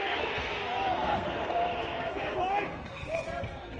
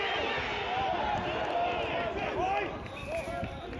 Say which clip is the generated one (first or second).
first